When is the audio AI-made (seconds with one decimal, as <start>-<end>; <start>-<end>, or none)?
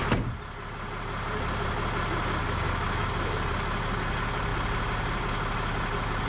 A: 2.4-3.1